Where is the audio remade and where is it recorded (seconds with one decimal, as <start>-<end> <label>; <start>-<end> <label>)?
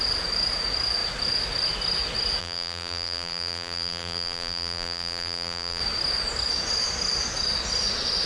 0.0-2.4 recorded; 2.4-5.8 remade; 5.8-8.3 recorded